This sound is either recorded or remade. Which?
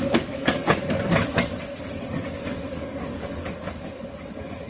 remade